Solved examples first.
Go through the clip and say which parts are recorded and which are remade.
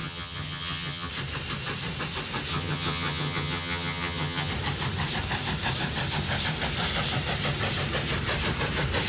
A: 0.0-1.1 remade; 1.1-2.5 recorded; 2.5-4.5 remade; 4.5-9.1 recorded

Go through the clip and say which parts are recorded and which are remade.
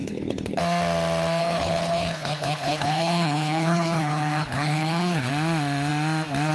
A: 0.0-0.6 remade; 0.6-1.4 recorded; 1.4-5.3 remade; 5.3-6.5 recorded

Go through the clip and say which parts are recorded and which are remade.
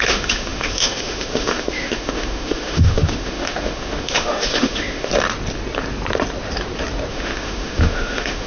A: 0.0-5.1 remade; 5.1-7.1 recorded; 7.1-8.5 remade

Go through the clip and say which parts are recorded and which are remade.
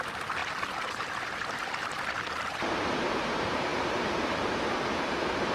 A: 0.0-0.4 remade; 0.4-2.3 recorded; 2.3-5.5 remade